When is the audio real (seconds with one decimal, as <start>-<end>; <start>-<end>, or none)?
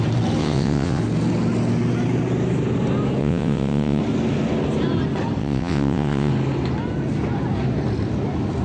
0.0-0.4; 1.0-3.2; 4.0-5.4; 6.3-8.6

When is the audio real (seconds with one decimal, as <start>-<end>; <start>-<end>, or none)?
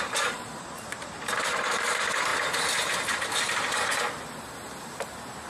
2.3-2.9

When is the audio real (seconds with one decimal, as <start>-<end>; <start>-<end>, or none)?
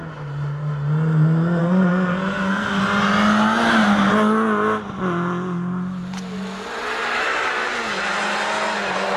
0.0-1.6; 2.8-9.2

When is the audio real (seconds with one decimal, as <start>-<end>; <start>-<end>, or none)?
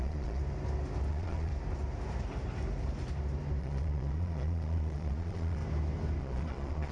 0.4-1.1; 1.5-3.6; 5.6-6.2